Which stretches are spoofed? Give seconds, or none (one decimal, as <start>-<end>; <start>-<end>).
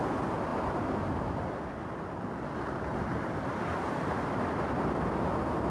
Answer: 0.5-1.5; 2.9-5.3